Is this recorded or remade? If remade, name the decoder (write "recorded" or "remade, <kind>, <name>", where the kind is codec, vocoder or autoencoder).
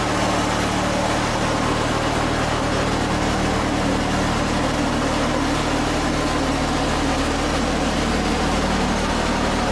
recorded